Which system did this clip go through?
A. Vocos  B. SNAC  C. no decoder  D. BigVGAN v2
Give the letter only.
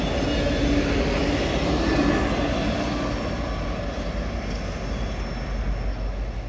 C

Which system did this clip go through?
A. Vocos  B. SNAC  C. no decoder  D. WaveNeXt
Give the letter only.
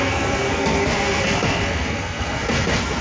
B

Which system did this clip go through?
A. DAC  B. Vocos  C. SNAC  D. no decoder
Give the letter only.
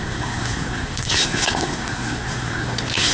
C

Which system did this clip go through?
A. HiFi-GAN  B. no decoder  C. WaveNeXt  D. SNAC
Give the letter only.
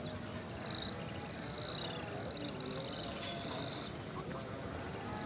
B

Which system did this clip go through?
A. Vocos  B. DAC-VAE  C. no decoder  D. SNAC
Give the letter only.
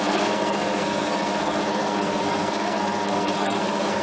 D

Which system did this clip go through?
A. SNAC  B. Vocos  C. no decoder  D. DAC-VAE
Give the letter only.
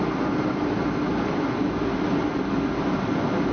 C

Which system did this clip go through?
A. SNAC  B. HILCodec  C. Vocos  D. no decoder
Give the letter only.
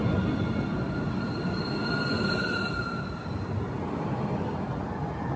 D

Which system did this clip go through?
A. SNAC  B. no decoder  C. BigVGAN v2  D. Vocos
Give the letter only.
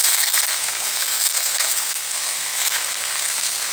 A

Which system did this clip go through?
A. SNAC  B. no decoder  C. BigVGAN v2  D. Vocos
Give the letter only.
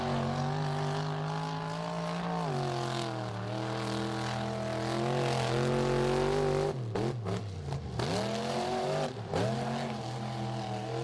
B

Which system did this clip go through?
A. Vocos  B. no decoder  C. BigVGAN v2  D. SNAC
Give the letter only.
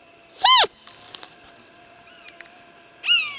B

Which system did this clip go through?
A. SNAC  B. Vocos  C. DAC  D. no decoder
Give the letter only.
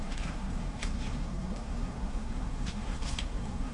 A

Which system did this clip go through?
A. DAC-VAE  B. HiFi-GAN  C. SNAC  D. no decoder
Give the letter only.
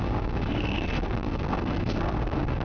C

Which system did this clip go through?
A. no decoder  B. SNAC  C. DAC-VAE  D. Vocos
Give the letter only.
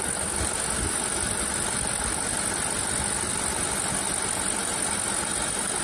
A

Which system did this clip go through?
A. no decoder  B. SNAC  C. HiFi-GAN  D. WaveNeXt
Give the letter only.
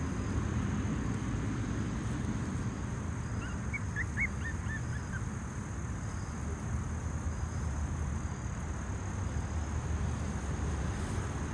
A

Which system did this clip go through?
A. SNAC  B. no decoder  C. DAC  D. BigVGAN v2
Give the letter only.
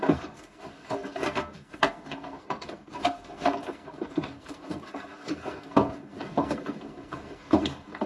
A